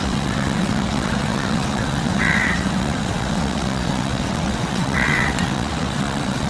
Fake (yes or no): yes